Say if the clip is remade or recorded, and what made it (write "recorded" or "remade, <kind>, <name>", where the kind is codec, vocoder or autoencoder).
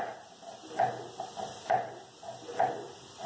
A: recorded